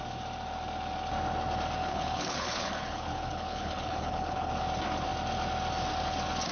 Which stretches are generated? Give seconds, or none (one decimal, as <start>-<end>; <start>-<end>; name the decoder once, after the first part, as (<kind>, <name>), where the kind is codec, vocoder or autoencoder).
1.8-4.5 (codec, HILCodec)